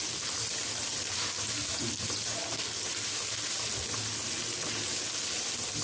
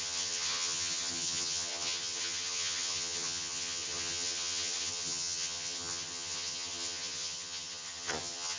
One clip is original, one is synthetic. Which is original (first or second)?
first